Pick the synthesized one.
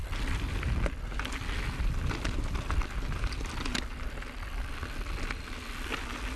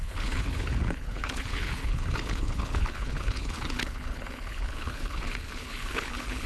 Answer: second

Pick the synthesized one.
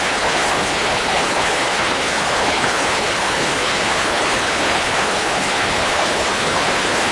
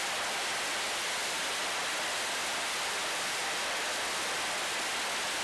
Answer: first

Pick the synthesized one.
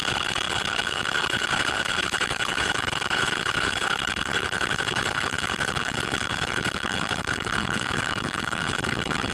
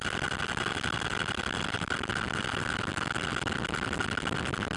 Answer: first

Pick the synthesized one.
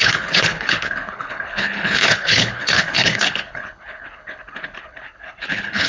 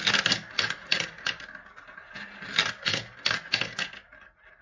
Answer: first